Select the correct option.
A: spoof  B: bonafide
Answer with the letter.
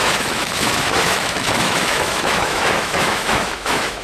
A